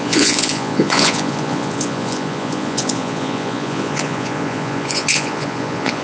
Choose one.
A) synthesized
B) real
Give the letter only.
A